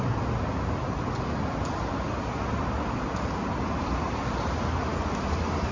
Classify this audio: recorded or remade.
recorded